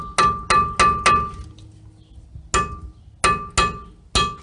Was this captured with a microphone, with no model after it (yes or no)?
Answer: yes